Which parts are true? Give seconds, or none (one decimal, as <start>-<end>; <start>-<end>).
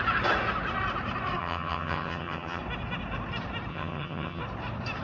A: 0.0-1.4; 2.6-3.7; 4.4-5.0